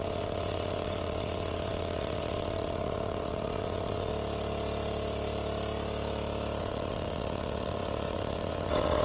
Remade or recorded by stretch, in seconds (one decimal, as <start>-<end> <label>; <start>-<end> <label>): 0.0-4.1 remade; 4.1-6.6 recorded; 6.6-9.0 remade